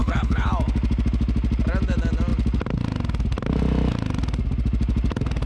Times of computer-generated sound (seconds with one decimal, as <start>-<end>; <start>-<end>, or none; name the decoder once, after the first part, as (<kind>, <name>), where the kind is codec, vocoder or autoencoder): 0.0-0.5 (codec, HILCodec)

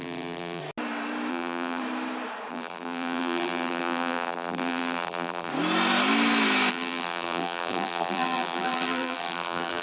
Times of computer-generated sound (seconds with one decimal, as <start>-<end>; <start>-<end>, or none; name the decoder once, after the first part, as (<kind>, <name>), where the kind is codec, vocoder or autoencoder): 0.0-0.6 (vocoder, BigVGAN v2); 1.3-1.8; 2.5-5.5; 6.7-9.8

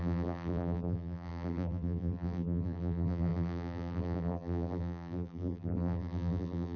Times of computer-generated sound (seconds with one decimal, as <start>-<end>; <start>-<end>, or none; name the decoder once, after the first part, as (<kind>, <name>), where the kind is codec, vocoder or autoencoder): 0.0-6.8 (vocoder, BigVGAN v2)